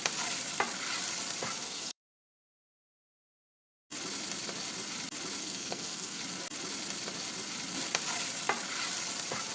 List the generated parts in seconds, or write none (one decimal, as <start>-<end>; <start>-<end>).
1.6-2.6; 5.4-6.2